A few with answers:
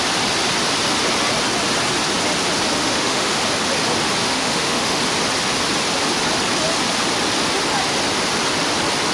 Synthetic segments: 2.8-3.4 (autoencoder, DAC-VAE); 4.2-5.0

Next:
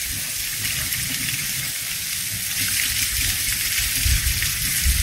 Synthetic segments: none